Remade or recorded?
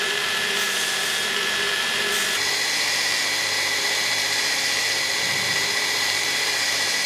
remade